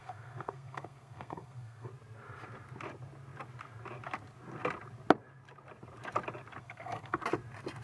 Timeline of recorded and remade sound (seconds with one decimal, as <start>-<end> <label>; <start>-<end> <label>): 0.0-1.9 remade; 1.9-6.6 recorded; 6.6-7.2 remade; 7.2-7.8 recorded

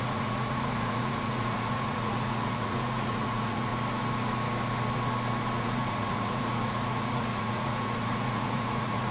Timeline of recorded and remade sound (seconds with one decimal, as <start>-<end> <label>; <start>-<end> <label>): 0.0-3.7 remade; 3.7-5.6 recorded; 5.6-9.1 remade

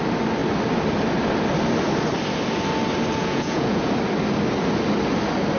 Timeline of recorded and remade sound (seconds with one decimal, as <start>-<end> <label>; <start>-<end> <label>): 0.0-3.2 recorded; 3.2-3.9 remade; 3.9-5.6 recorded

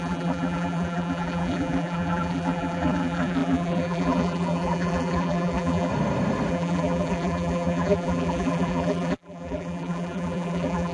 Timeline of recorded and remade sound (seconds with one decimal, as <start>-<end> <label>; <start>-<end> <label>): 0.0-5.9 remade; 5.9-6.5 recorded; 6.5-10.9 remade

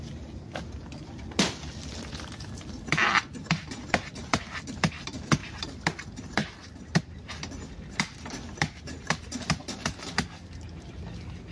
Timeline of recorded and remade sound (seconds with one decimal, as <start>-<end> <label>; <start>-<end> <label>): 0.0-11.5 recorded

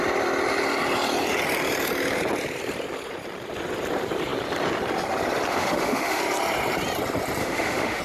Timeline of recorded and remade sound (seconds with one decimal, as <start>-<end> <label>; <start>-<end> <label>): 0.0-5.5 recorded; 5.5-6.2 remade; 6.2-7.4 recorded; 7.4-8.0 remade